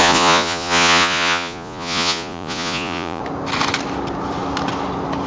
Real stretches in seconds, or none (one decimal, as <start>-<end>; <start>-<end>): 3.2-5.3